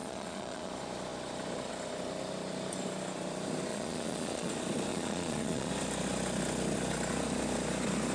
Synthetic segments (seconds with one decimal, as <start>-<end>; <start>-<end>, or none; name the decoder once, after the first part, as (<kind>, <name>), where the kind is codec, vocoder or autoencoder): 0.0-0.7 (vocoder, Vocos); 3.7-4.5; 4.9-5.7